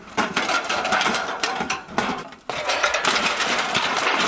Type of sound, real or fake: fake